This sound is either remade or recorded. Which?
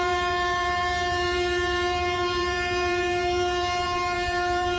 remade